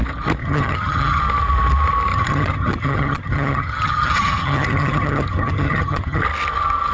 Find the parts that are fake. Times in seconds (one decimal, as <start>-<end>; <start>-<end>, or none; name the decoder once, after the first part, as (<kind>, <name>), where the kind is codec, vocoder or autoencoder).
0.4-1.2 (vocoder, HiFi-GAN); 2.1-6.2